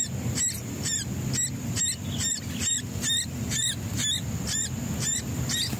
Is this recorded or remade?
recorded